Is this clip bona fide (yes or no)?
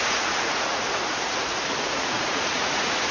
no